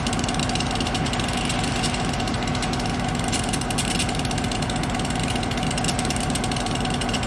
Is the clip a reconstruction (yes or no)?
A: no